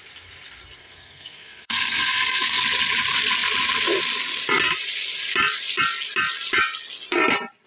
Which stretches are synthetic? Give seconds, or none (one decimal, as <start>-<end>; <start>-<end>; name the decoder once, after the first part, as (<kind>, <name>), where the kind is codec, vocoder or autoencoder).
0.8-2.6 (codec, SNAC)